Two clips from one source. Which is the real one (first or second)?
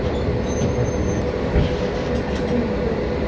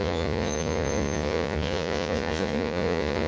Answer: first